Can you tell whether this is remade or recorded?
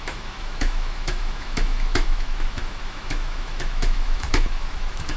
remade